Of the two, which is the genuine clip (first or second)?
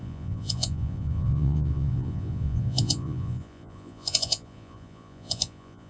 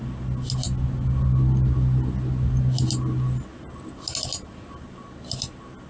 second